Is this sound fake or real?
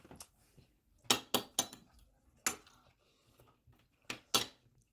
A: real